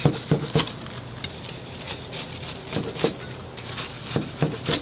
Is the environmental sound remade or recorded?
recorded